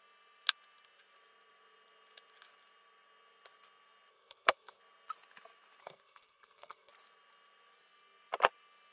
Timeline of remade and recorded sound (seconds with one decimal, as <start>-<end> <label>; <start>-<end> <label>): 0.0-4.1 recorded; 4.1-4.8 remade; 4.8-5.8 recorded; 5.8-6.9 remade; 6.9-8.9 recorded